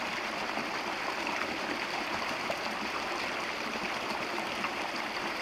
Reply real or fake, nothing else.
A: fake